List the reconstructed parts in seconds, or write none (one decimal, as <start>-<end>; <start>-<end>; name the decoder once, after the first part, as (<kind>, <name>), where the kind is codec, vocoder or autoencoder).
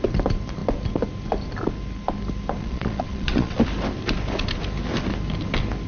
2.6-3.6 (vocoder, Vocos)